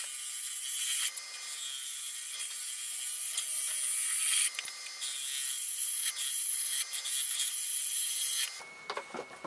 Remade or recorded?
recorded